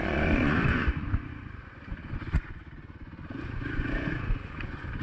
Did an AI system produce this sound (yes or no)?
yes